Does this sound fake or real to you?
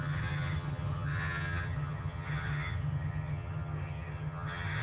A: fake